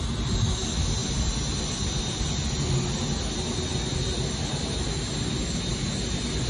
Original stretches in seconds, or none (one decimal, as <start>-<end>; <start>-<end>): 0.0-6.5

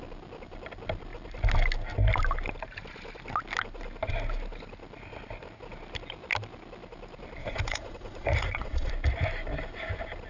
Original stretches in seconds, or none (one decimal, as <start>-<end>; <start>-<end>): 0.0-7.4; 8.9-10.3

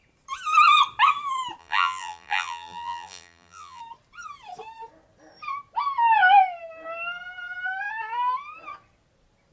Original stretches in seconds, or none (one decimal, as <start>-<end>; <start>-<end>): 0.0-1.6; 3.8-9.5

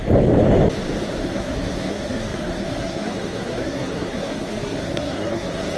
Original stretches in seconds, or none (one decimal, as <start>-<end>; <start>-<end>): 0.0-1.2

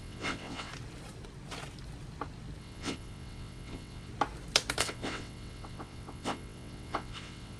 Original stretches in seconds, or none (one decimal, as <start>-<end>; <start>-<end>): 0.7-2.6; 4.1-4.8

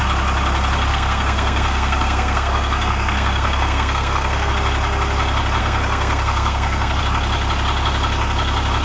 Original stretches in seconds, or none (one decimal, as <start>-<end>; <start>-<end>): 0.0-0.9; 4.5-5.6; 7.0-8.8

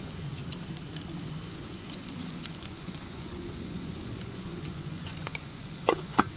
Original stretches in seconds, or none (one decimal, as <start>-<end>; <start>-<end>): 0.4-1.2

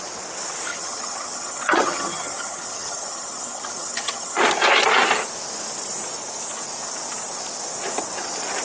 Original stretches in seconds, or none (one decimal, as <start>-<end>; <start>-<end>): 0.0-0.7; 4.4-8.6